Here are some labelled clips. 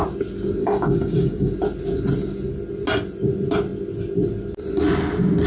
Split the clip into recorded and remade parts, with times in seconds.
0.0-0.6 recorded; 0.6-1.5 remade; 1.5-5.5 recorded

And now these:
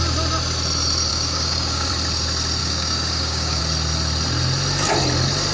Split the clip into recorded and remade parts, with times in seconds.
0.0-1.1 recorded; 1.1-1.9 remade; 1.9-2.6 recorded; 2.6-3.6 remade; 3.6-5.5 recorded

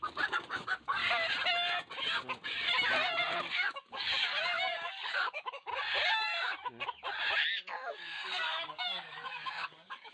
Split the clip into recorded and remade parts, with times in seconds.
0.0-1.0 remade; 1.0-3.5 recorded; 3.5-5.7 remade; 5.7-7.9 recorded; 7.9-10.1 remade

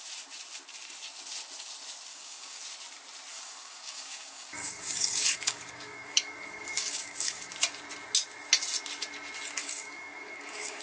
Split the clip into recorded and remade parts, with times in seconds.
0.0-2.1 recorded; 2.1-2.6 remade; 2.6-3.3 recorded; 3.3-7.5 remade; 7.5-9.6 recorded; 9.6-10.8 remade

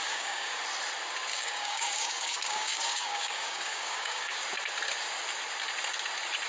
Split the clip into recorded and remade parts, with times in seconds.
0.0-0.6 remade; 0.6-1.3 recorded; 1.3-4.4 remade; 4.4-6.5 recorded

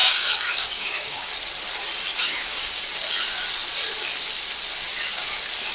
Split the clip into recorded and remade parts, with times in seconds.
0.0-1.3 remade; 1.3-2.2 recorded; 2.2-2.8 remade; 2.8-5.7 recorded

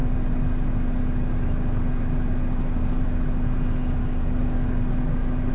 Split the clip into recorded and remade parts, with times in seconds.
0.0-4.0 recorded; 4.0-5.5 remade